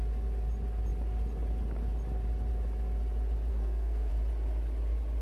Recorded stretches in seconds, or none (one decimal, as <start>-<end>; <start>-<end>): 0.0-3.5; 4.1-5.2